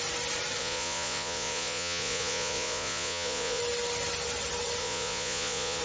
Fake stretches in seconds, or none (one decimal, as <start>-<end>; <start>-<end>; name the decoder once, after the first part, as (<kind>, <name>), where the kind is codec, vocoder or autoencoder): 0.6-3.6 (vocoder, Vocos); 4.8-5.8